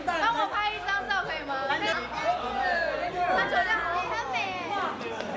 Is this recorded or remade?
recorded